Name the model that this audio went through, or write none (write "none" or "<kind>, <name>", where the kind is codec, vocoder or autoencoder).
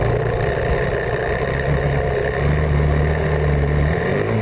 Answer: none